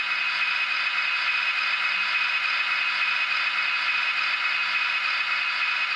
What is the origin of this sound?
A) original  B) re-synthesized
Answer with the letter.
A